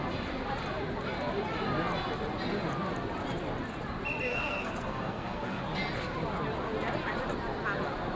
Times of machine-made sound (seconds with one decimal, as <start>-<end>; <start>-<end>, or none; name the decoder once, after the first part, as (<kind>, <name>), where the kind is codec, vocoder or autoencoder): 4.3-5.6 (codec, SNAC)